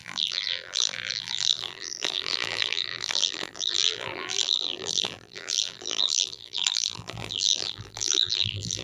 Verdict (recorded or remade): remade